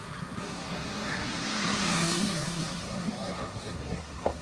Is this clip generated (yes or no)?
yes